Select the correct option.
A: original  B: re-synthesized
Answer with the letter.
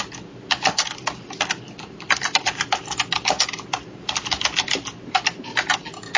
A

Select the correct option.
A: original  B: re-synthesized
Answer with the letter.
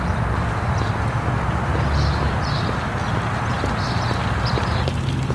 A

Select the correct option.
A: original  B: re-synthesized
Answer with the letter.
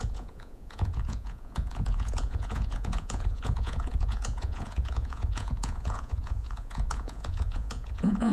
B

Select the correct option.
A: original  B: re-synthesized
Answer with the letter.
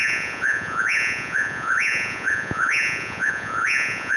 B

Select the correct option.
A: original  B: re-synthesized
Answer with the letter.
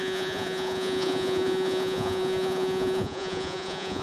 B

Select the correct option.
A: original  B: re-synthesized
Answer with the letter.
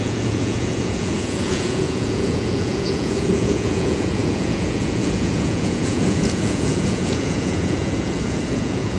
B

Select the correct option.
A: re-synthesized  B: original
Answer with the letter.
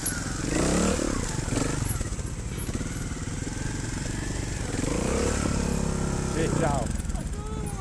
B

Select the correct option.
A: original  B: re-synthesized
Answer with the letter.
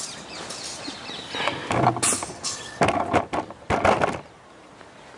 A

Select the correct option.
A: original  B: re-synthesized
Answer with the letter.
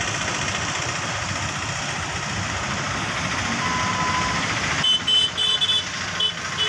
A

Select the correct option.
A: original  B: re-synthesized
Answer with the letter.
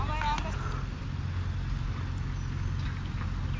A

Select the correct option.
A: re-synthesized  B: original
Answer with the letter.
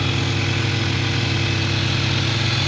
B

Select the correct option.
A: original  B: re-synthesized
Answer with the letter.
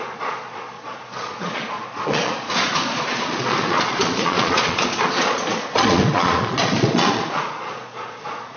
B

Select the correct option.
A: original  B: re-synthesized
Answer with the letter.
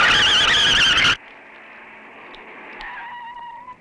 A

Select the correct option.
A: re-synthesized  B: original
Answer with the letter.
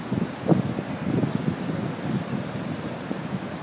B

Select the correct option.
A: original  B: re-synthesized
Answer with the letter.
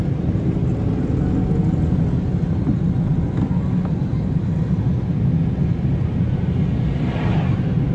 A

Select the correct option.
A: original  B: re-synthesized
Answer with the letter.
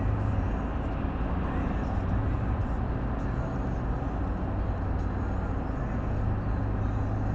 A